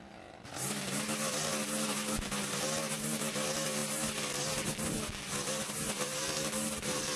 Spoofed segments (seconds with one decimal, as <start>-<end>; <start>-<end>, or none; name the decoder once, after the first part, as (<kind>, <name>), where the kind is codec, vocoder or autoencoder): none